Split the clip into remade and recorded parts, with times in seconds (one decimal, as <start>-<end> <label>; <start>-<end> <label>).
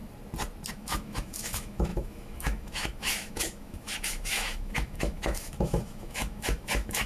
0.0-0.7 recorded; 0.7-7.1 remade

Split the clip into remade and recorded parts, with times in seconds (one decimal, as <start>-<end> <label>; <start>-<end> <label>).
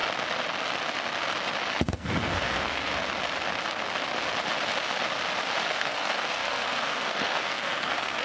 0.0-1.8 recorded; 1.8-2.9 remade; 2.9-5.7 recorded; 5.7-8.2 remade